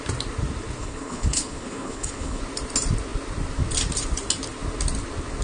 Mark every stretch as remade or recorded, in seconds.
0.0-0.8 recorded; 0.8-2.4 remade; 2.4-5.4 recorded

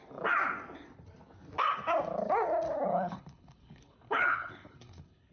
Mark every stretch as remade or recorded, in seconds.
0.0-2.9 recorded; 2.9-5.3 remade

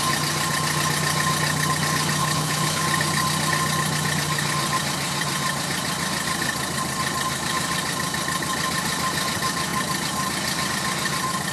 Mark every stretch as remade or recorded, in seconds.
0.0-2.2 recorded; 2.2-2.8 remade; 2.8-11.5 recorded

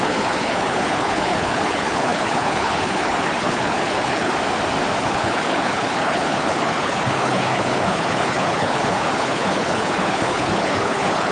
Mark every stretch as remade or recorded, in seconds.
0.0-4.3 remade; 4.3-5.0 recorded; 5.0-11.3 remade

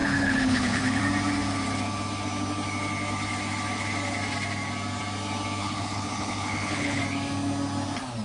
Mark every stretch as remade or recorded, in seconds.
0.0-1.0 remade; 1.0-5.6 recorded; 5.6-7.0 remade; 7.0-8.2 recorded

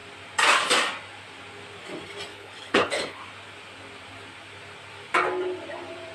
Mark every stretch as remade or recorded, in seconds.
0.0-2.3 recorded; 2.3-3.2 remade; 3.2-6.1 recorded

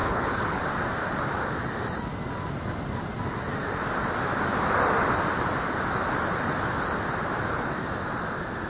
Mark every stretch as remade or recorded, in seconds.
0.0-0.6 remade; 0.6-8.7 recorded

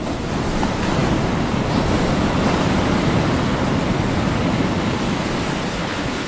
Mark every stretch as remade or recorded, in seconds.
0.0-5.7 recorded; 5.7-6.3 remade